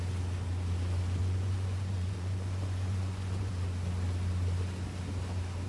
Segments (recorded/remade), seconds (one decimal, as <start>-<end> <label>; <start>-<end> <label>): 0.0-1.2 recorded; 1.2-3.5 remade; 3.5-5.7 recorded

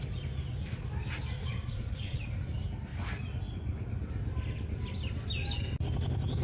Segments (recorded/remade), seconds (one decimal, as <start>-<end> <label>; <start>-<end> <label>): 0.0-1.6 recorded; 1.6-2.3 remade; 2.3-6.4 recorded